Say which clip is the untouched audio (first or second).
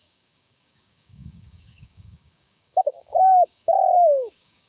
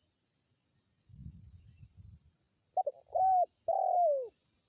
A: second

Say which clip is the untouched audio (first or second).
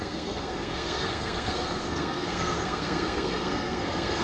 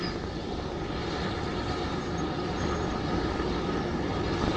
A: second